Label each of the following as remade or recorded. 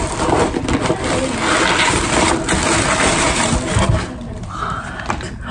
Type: recorded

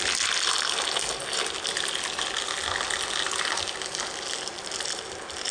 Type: recorded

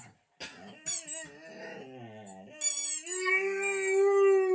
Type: recorded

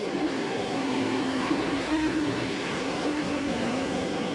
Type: remade